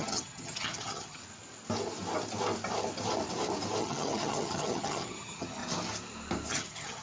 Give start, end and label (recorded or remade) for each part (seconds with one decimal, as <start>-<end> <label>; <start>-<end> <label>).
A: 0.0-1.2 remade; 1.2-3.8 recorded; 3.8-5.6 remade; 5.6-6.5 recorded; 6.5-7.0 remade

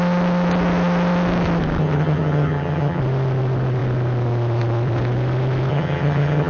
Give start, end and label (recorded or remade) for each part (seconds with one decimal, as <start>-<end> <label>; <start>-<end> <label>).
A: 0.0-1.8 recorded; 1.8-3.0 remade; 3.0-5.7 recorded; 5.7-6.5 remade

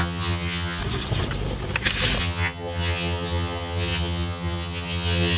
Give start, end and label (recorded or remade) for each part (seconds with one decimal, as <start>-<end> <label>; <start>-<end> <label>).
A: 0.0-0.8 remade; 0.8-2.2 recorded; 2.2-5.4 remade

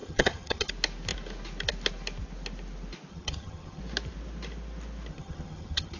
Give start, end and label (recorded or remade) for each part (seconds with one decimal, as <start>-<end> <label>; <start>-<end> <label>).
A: 0.0-0.7 remade; 0.7-3.1 recorded; 3.1-3.8 remade; 3.8-5.1 recorded; 5.1-6.0 remade

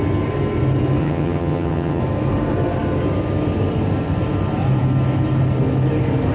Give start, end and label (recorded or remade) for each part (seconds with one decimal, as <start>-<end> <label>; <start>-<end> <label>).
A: 0.0-1.0 recorded; 1.0-2.0 remade; 2.0-6.3 recorded